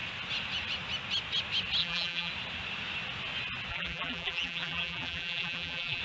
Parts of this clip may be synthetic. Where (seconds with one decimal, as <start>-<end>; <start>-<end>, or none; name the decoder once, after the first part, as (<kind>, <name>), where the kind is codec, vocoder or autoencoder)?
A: 1.8-2.3 (vocoder, BigVGAN v2); 3.7-6.0